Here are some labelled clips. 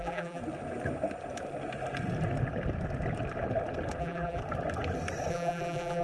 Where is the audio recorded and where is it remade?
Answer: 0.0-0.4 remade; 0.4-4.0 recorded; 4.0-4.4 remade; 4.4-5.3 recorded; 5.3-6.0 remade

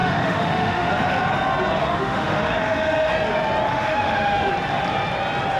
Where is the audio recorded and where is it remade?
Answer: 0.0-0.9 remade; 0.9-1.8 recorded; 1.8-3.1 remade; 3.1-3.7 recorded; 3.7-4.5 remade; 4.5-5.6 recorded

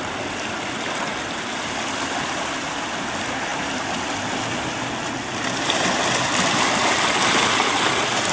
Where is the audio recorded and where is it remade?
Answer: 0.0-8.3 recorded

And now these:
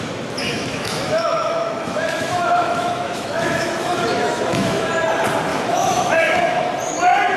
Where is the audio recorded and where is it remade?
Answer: 0.0-0.4 recorded; 0.4-4.8 remade; 4.8-5.5 recorded; 5.5-6.7 remade; 6.7-7.4 recorded

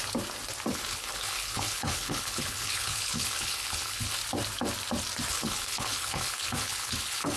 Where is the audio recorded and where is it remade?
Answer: 0.0-0.7 recorded; 0.7-4.2 remade; 4.2-5.3 recorded; 5.3-7.4 remade

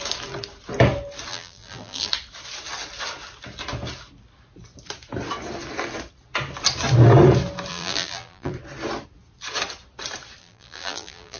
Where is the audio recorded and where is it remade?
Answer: 0.0-1.3 recorded; 1.3-2.1 remade; 2.1-7.7 recorded; 7.7-8.5 remade; 8.5-10.4 recorded; 10.4-11.4 remade